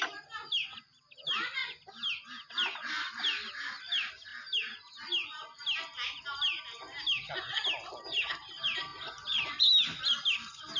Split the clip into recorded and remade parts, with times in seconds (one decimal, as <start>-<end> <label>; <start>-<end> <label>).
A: 0.0-1.6 remade; 1.6-2.5 recorded; 2.5-4.3 remade; 4.3-8.5 recorded; 8.5-10.8 remade